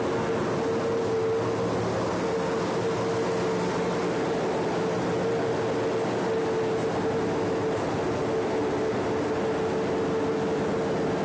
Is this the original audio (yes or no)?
yes